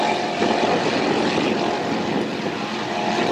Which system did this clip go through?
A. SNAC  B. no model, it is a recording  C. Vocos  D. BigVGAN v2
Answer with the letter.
B